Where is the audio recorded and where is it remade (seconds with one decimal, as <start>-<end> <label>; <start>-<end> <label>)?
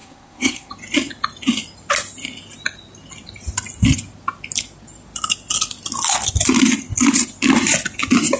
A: 0.0-0.7 remade; 0.7-8.4 recorded